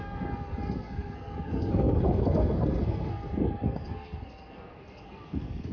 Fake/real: fake